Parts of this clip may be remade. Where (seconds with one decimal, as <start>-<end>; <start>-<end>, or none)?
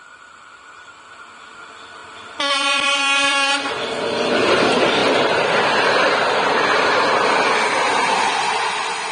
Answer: 2.0-3.7; 5.0-6.5; 8.3-9.1